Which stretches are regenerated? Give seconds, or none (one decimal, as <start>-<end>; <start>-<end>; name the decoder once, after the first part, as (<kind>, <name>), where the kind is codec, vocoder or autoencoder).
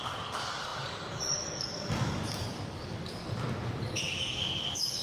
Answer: 0.0-3.2 (codec, DAC); 3.8-5.0